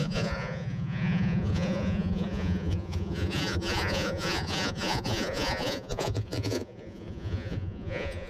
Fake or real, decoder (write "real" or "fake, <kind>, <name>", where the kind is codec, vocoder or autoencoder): fake, vocoder, Vocos